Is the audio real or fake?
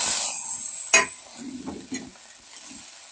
real